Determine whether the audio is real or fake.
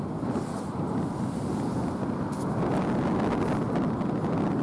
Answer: real